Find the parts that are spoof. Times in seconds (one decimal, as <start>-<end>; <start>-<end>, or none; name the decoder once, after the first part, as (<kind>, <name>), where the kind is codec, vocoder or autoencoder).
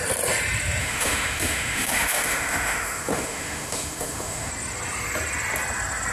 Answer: 0.8-4.5 (autoencoder, DAC-VAE)